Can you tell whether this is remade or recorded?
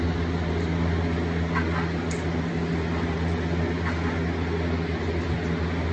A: recorded